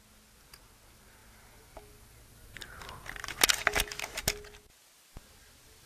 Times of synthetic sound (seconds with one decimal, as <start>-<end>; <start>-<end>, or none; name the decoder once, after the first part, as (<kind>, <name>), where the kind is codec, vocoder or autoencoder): none